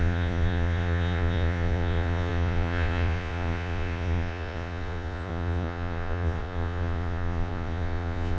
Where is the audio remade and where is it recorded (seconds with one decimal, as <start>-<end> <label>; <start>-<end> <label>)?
0.0-8.4 remade